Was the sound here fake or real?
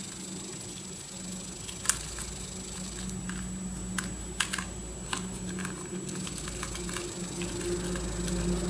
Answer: real